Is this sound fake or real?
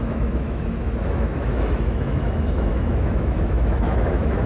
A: fake